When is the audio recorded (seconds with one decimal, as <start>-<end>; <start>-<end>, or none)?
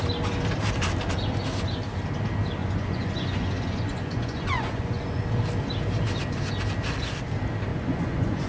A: 0.0-2.6; 5.2-7.7